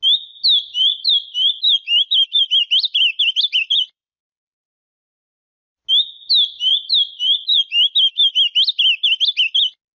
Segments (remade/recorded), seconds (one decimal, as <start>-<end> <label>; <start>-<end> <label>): 0.0-0.9 recorded; 0.9-5.6 remade; 5.6-6.7 recorded; 6.7-7.7 remade; 7.7-9.9 recorded